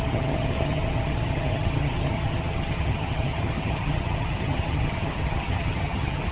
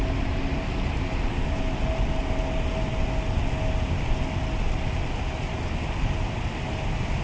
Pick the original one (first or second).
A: second